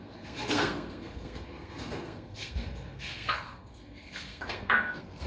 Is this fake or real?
fake